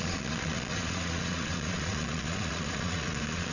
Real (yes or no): no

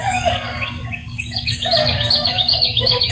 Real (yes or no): no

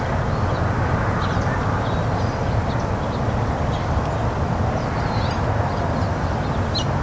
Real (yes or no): yes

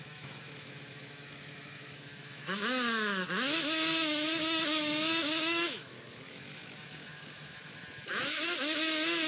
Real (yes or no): no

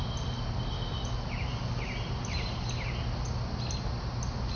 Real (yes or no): yes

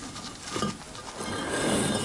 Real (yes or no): yes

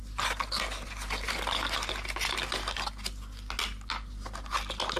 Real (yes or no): yes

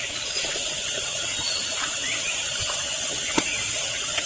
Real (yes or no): no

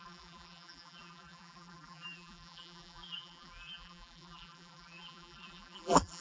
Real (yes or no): no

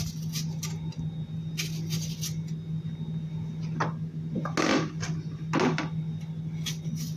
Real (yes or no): yes